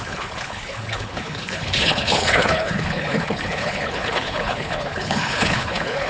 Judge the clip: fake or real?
fake